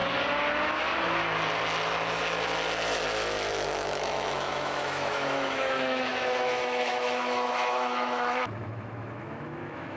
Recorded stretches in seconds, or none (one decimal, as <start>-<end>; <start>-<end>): 0.0-3.5